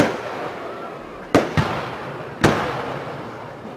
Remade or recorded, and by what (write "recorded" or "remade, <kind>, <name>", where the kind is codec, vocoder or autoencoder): recorded